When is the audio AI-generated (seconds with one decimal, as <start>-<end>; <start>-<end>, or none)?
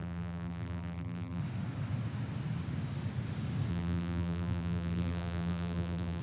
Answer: 0.0-1.4; 3.7-6.2